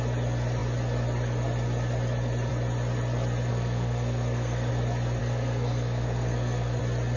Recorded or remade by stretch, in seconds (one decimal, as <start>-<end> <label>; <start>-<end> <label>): 0.0-3.5 recorded; 3.5-4.7 remade; 4.7-5.2 recorded; 5.2-6.8 remade; 6.8-7.2 recorded